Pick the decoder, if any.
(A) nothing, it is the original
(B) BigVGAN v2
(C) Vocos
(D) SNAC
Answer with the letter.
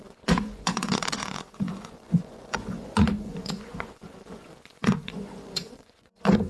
C